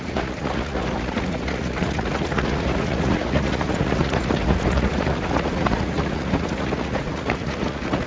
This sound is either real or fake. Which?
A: fake